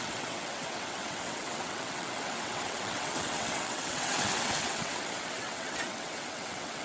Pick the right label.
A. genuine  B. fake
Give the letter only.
B